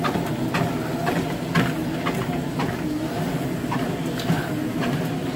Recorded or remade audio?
recorded